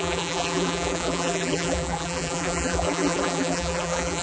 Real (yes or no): no